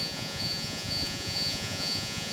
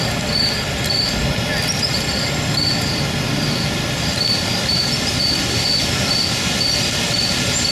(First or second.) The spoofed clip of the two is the first